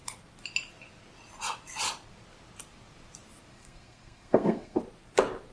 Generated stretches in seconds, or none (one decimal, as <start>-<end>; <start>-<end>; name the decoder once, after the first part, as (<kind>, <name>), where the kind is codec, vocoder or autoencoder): 3.5-4.8 (codec, SNAC)